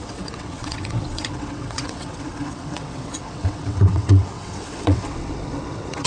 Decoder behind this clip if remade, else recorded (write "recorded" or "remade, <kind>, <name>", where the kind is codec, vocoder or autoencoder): remade, vocoder, WaveNeXt